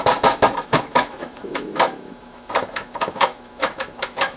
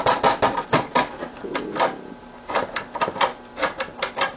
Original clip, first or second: second